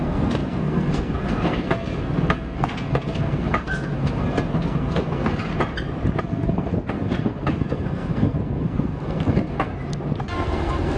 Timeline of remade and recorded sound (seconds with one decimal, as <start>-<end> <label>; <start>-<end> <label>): 0.0-5.5 remade; 5.5-6.2 recorded; 6.2-9.7 remade; 9.7-10.2 recorded; 10.2-11.0 remade